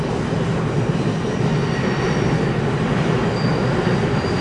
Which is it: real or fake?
real